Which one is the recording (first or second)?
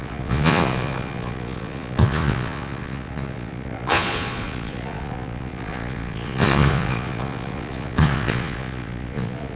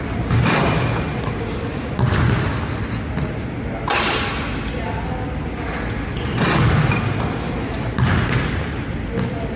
second